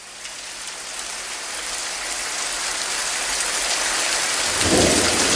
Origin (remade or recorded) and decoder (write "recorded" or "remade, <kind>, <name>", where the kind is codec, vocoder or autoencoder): recorded